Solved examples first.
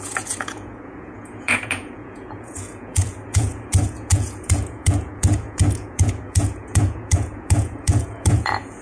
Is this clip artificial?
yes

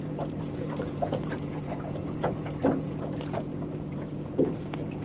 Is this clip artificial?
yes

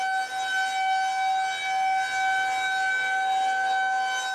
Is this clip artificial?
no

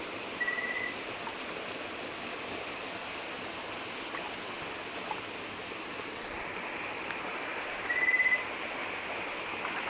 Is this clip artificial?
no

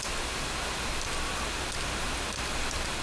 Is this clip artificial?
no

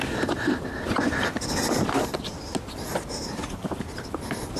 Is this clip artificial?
no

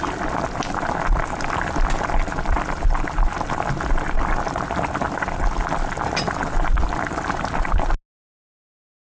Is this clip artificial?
no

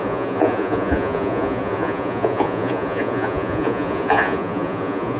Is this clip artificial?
yes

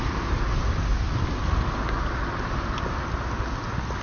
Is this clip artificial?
no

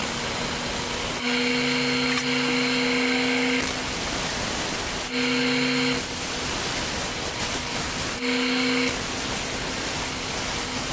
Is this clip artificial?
no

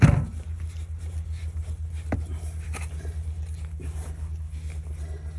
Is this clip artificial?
no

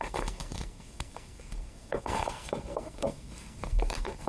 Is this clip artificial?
yes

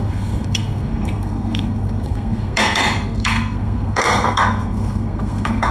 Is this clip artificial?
yes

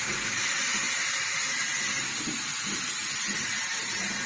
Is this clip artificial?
no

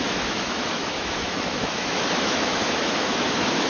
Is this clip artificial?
yes